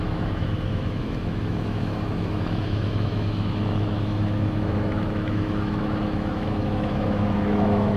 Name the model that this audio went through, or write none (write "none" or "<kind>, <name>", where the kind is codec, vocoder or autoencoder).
autoencoder, DAC-VAE